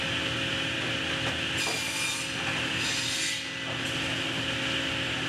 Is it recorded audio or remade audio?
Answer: recorded